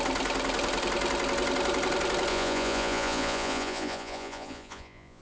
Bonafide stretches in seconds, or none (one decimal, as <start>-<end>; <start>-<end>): 0.0-2.3